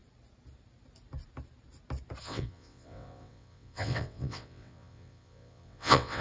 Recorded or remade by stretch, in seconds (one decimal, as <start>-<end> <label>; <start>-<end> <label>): 0.0-2.2 recorded; 2.2-6.2 remade